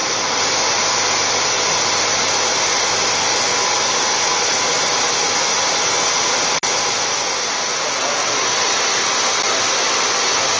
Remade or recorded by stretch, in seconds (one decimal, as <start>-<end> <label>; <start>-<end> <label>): 0.0-10.6 recorded